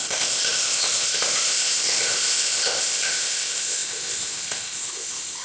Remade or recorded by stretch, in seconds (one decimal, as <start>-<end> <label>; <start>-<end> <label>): 0.0-5.4 remade